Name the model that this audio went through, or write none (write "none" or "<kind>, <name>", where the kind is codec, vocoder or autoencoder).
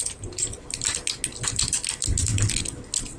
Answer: none